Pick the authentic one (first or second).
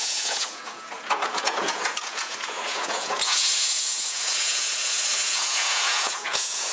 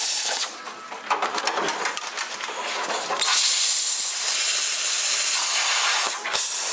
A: second